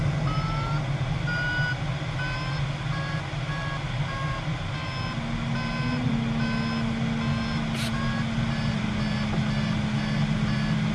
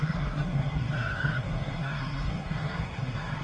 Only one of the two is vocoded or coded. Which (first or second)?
second